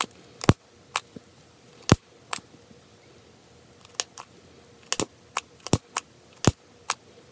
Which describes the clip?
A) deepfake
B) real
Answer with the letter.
B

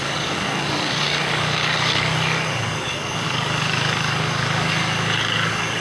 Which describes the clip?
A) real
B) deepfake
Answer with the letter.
B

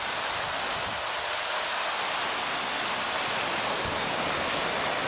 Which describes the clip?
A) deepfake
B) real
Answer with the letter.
B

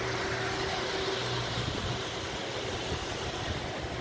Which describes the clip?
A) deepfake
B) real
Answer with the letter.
B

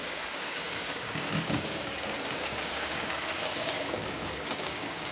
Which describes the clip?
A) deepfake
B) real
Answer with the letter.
A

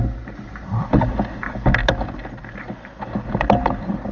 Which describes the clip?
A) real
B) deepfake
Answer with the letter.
A